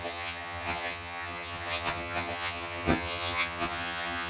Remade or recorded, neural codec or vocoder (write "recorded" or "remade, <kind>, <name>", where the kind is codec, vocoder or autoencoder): remade, vocoder, HiFi-GAN